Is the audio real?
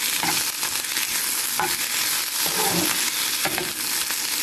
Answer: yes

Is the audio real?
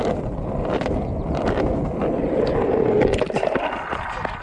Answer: yes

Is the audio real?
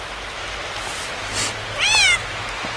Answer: yes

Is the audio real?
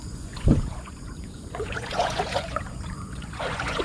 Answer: no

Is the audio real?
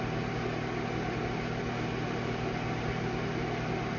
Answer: yes